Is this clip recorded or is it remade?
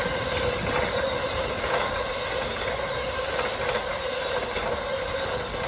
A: recorded